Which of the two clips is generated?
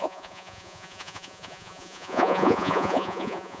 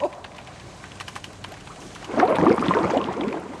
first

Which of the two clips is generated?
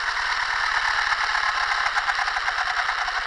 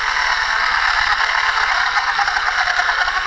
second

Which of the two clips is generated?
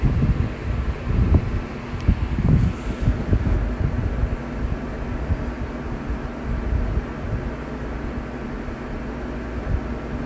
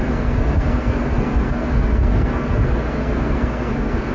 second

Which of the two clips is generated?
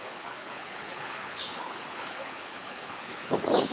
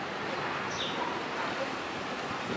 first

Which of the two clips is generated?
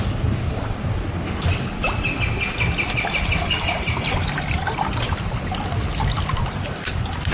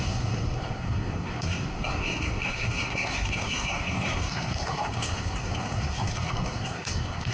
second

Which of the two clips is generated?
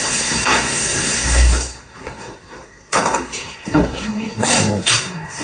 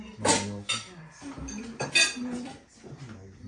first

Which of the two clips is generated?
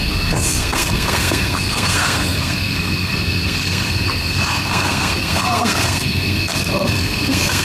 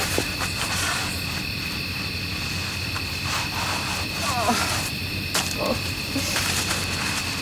first